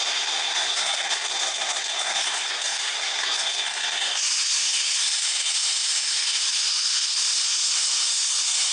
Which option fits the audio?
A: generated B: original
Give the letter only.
A